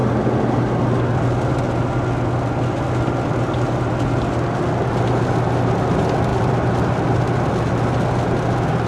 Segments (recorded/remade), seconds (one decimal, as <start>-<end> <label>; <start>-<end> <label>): 0.0-8.9 recorded